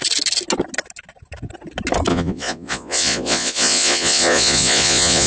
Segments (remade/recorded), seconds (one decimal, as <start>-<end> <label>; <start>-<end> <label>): 0.0-2.1 recorded; 2.1-5.3 remade